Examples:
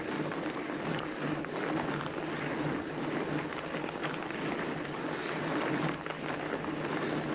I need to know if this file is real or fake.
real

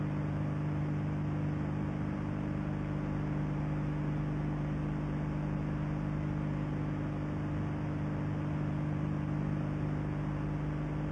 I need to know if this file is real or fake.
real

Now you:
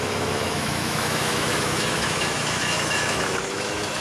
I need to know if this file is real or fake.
fake